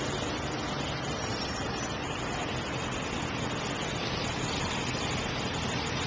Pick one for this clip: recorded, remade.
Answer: recorded